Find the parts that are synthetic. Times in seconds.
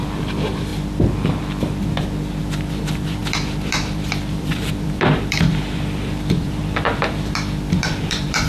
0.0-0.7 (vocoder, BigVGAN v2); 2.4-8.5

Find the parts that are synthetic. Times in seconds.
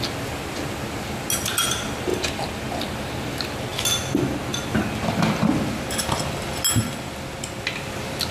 none